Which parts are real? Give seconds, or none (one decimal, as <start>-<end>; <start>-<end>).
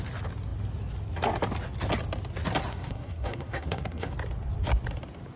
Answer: 0.0-2.7; 4.1-5.4